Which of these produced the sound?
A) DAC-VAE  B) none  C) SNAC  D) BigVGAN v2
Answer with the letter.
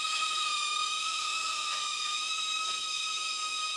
A